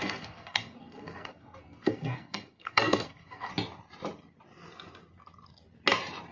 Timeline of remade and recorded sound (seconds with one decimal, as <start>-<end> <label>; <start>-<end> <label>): 0.0-3.5 remade; 3.5-6.3 recorded